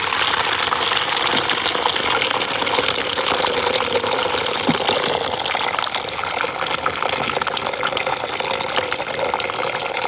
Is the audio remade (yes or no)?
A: no